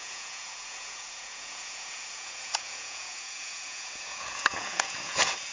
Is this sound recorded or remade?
remade